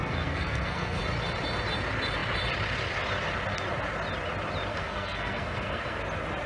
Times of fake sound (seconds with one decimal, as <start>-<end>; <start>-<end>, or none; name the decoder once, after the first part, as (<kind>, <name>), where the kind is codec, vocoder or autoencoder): 0.0-1.0 (codec, SNAC); 4.7-6.0